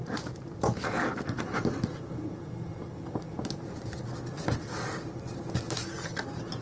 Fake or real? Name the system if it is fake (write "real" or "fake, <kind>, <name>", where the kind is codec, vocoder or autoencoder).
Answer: real